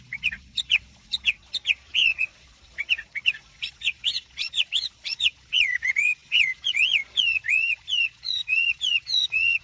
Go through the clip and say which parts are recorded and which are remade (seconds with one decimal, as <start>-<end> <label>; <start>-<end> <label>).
0.0-9.6 remade